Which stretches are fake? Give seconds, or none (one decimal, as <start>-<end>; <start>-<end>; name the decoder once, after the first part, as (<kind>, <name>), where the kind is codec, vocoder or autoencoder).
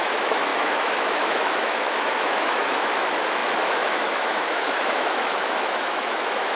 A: 0.0-6.6 (autoencoder, DAC-VAE)